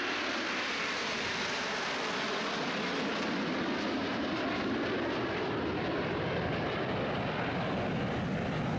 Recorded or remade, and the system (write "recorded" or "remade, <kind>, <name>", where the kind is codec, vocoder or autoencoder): recorded